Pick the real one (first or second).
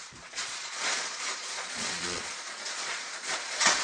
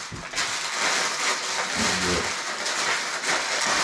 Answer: second